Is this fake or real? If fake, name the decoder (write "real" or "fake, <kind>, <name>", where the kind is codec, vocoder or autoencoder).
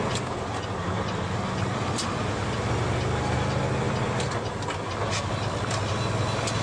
real